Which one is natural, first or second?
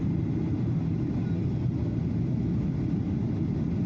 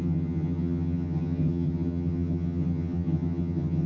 first